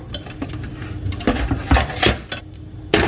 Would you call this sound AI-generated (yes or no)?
no